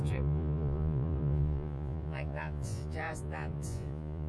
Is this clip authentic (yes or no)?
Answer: no